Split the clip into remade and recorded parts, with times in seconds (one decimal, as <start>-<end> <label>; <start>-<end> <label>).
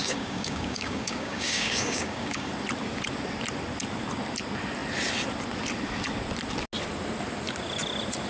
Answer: 0.0-2.5 remade; 2.5-8.3 recorded